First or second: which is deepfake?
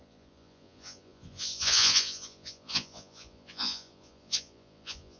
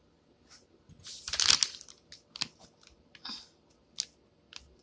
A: first